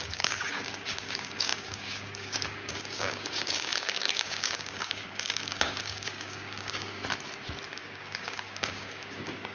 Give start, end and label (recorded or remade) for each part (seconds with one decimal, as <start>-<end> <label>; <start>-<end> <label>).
0.0-7.0 remade; 7.0-7.7 recorded; 7.7-9.5 remade